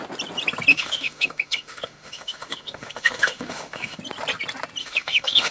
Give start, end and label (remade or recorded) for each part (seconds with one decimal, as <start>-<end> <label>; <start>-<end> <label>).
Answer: 0.0-0.7 recorded; 0.7-4.0 remade; 4.0-4.8 recorded; 4.8-5.5 remade